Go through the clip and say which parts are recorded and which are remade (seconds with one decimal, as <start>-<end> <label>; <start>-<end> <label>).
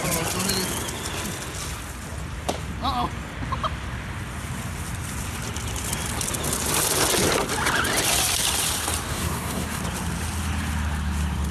0.0-9.1 recorded; 9.1-9.8 remade; 9.8-11.5 recorded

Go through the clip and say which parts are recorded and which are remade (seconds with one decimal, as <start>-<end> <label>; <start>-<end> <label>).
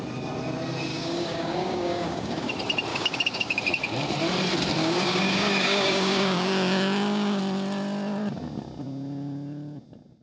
0.0-0.9 recorded; 0.9-2.5 remade; 2.5-2.9 recorded; 2.9-3.6 remade; 3.6-4.8 recorded; 4.8-7.4 remade; 7.4-10.2 recorded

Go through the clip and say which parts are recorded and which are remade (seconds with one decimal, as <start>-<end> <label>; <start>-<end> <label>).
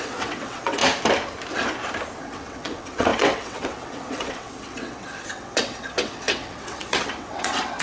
0.0-0.8 remade; 0.8-2.2 recorded; 2.2-7.8 remade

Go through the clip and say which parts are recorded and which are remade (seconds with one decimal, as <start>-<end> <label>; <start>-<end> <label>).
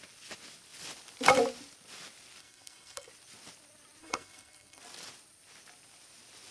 0.0-2.4 recorded; 2.4-3.1 remade; 3.1-4.0 recorded; 4.0-4.8 remade; 4.8-6.5 recorded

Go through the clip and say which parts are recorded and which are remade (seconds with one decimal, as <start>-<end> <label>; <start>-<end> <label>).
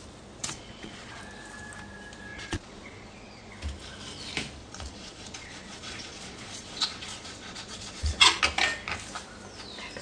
0.0-0.4 recorded; 0.4-1.2 remade; 1.2-2.3 recorded; 2.3-3.5 remade; 3.5-4.6 recorded; 4.6-8.4 remade; 8.4-10.0 recorded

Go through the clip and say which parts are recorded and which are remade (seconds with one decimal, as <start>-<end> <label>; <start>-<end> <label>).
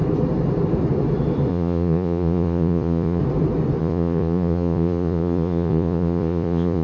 0.0-1.5 recorded; 1.5-3.2 remade; 3.2-3.8 recorded; 3.8-6.8 remade